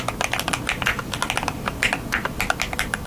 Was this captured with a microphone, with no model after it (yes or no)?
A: yes